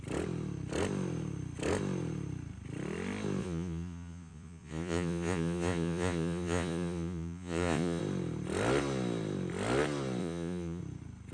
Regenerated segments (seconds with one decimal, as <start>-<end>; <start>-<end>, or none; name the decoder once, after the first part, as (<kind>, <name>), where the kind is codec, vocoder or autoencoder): 3.4-8.0 (vocoder, Vocos); 10.2-10.8